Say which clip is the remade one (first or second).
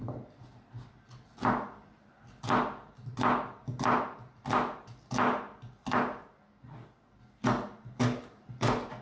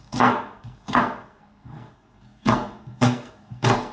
second